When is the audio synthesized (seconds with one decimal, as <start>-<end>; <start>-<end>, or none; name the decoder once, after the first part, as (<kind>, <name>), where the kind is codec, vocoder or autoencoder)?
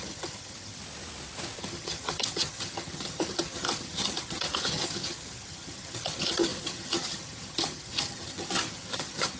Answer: 0.0-0.8 (vocoder, HiFi-GAN); 1.6-9.4